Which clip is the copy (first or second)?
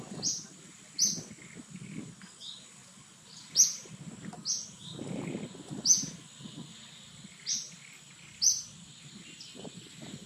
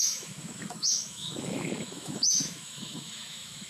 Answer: second